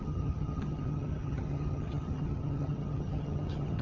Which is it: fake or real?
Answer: fake